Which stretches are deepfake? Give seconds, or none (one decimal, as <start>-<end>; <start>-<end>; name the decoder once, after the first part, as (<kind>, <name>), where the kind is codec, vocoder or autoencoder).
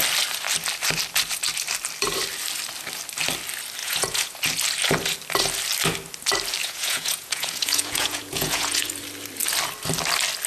3.8-4.4 (vocoder, Vocos); 6.6-8.9